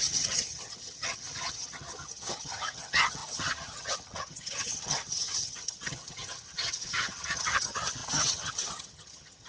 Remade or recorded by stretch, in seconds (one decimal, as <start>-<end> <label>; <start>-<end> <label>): 0.0-9.5 remade